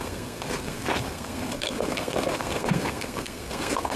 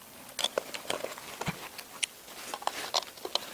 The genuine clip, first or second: second